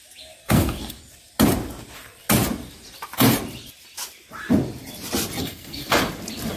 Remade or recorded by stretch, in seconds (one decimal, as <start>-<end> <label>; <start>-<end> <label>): 0.0-0.4 recorded; 0.4-1.0 remade; 1.0-5.4 recorded; 5.4-6.0 remade; 6.0-6.6 recorded